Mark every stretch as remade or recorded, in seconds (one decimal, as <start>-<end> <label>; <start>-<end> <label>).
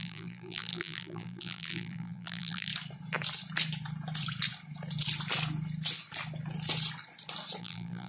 0.0-2.7 remade; 2.7-7.6 recorded; 7.6-8.1 remade